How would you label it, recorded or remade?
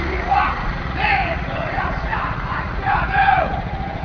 remade